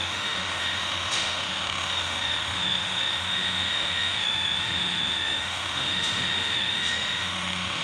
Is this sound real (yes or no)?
no